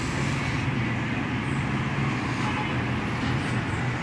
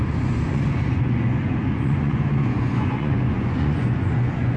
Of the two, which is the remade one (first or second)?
second